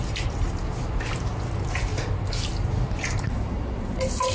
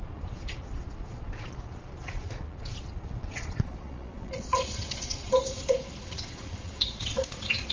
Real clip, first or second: first